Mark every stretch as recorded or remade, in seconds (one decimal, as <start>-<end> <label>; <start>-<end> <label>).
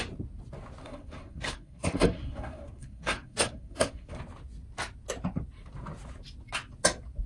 0.0-0.8 recorded; 0.8-4.2 remade; 4.2-7.3 recorded